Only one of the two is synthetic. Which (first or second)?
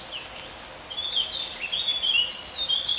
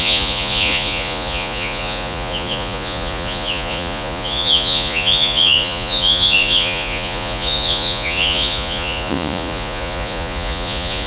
second